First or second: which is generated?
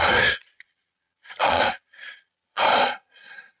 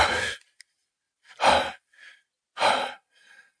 first